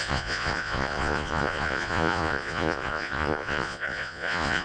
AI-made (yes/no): yes